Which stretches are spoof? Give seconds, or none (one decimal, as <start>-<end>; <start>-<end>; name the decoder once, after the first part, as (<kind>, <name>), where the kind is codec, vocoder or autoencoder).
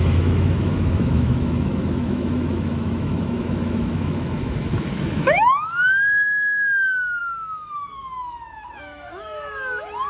0.0-10.1 (autoencoder, DAC-VAE)